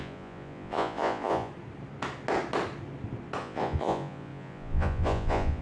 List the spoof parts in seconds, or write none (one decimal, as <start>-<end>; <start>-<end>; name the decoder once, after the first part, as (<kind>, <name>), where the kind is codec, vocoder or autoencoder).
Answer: 0.0-1.5 (vocoder, Vocos); 3.4-5.6

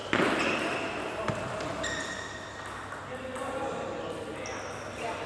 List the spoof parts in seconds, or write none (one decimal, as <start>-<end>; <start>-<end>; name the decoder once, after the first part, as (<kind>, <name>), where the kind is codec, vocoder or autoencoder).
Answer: none

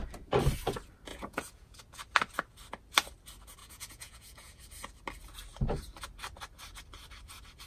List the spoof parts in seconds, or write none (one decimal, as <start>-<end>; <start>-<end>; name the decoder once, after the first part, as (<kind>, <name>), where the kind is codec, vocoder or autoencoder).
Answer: 1.1-1.8 (vocoder, Vocos); 3.6-4.6

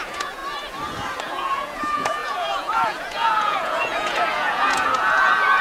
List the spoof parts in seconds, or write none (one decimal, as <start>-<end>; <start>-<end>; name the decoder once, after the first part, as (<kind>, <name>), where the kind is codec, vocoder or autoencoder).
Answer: 0.0-0.4 (vocoder, Vocos); 1.2-5.6

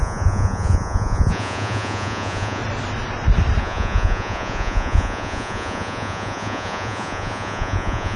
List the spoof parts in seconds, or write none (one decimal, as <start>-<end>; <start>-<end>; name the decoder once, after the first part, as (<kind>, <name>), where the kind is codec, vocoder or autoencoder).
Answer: 0.0-2.6 (vocoder, Vocos); 3.6-8.2

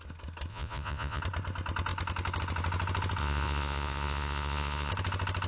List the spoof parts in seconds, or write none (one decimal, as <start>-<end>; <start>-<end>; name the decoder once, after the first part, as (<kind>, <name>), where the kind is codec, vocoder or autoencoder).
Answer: 0.5-1.2 (vocoder, Vocos); 3.2-4.9